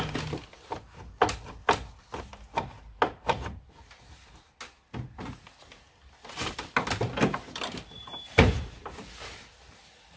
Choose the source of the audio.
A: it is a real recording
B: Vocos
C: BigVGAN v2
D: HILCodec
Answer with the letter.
A